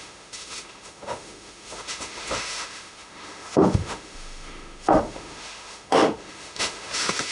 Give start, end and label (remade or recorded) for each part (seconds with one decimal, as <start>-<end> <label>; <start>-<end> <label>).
0.0-7.3 remade